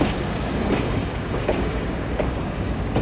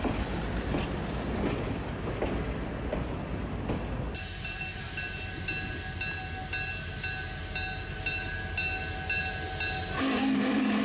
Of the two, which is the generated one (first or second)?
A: first